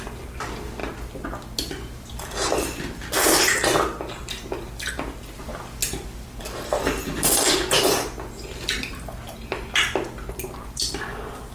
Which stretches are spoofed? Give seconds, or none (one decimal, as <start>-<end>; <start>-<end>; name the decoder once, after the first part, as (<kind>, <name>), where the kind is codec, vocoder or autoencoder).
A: none